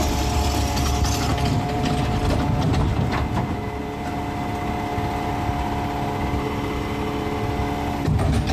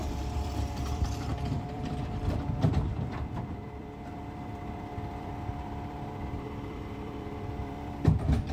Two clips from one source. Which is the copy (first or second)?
second